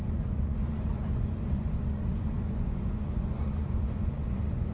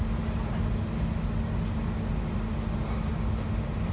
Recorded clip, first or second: second